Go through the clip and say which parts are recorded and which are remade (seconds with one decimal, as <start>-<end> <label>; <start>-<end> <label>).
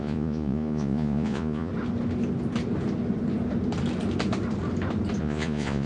0.0-1.7 remade; 1.7-5.2 recorded; 5.2-5.9 remade